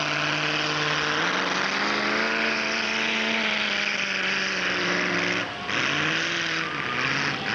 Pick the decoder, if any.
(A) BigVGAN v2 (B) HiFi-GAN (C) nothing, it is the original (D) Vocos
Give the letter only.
C